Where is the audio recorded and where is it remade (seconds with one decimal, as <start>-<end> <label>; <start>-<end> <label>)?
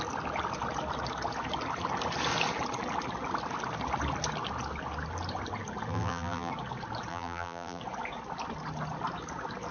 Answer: 0.0-5.9 recorded; 5.9-6.5 remade; 6.5-7.1 recorded; 7.1-7.8 remade; 7.8-9.7 recorded